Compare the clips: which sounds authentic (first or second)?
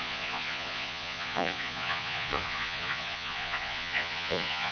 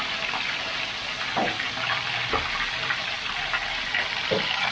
second